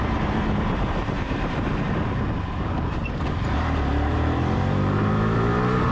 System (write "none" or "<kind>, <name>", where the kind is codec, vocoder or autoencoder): vocoder, BigVGAN v2